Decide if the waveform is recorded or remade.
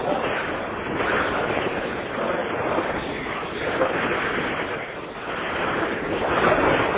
recorded